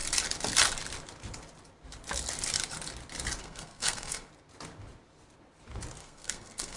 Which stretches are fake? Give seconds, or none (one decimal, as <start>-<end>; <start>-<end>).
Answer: 3.4-4.3; 6.0-6.8